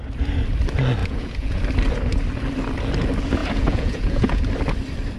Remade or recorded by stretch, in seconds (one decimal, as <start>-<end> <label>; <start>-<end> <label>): 0.0-1.0 recorded; 1.0-1.6 remade; 1.6-3.4 recorded; 3.4-4.5 remade; 4.5-5.2 recorded